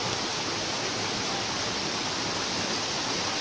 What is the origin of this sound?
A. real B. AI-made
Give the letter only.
A